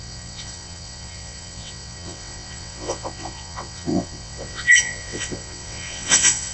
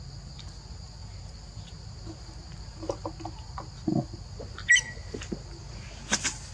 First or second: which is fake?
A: first